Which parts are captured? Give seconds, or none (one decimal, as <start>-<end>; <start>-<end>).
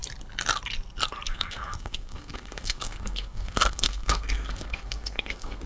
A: 0.0-1.3